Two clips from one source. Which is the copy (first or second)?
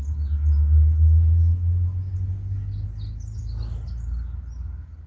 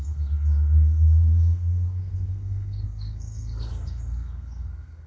second